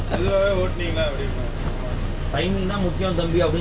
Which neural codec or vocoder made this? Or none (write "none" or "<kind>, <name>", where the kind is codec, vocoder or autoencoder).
none